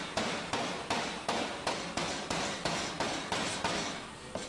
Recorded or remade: recorded